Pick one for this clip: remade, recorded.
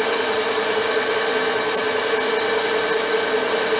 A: recorded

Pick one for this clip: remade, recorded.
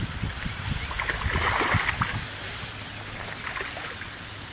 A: recorded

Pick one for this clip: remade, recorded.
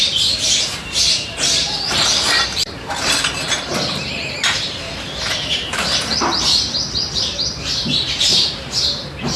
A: remade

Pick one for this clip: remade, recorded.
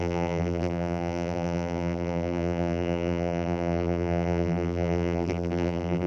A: remade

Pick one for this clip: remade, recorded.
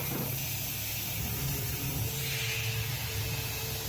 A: recorded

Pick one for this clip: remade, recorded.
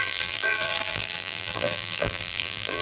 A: remade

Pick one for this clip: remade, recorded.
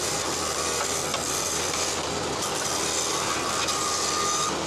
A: recorded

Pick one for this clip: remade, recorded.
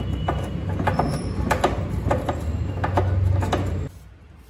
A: recorded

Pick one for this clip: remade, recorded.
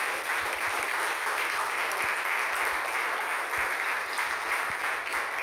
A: remade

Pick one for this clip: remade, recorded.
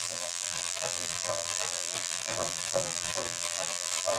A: remade